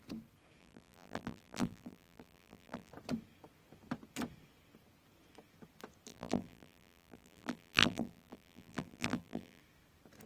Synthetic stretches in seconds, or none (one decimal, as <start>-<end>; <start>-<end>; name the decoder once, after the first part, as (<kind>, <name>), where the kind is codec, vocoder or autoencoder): 0.6-2.9 (vocoder, BigVGAN v2); 6.1-9.6